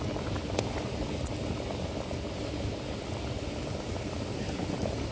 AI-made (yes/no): no